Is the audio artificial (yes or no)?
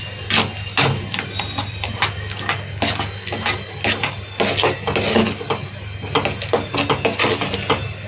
no